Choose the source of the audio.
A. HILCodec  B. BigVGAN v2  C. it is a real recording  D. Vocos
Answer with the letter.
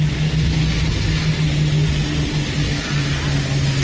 C